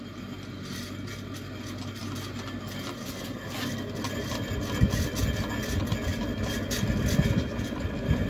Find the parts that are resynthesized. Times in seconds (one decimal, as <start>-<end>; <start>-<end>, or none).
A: none